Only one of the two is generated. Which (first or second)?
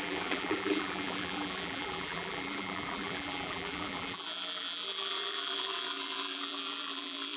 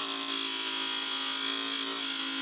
first